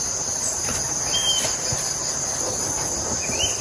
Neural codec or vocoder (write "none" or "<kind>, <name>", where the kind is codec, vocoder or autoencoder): vocoder, BigVGAN v2